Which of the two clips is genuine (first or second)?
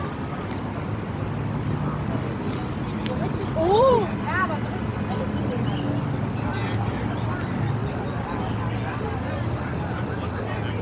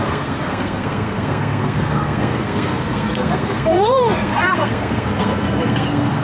first